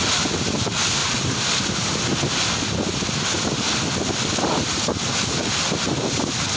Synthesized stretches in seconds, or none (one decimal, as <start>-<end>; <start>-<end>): 1.0-4.9